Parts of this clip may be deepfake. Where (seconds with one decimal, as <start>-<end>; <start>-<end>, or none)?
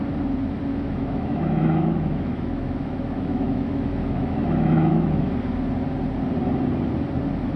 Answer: 0.7-5.3